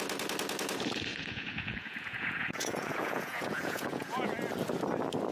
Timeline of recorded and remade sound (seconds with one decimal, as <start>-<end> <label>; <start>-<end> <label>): 0.0-1.1 recorded; 1.1-4.3 remade; 4.3-5.3 recorded